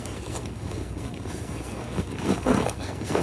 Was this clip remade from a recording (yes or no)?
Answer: yes